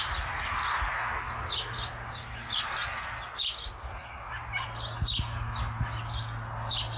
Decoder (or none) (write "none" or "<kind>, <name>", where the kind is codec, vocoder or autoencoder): none